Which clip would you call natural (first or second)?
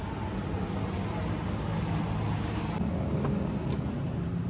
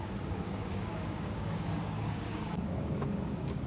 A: first